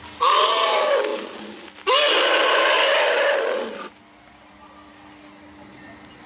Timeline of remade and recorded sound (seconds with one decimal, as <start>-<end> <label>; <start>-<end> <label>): 0.0-6.3 recorded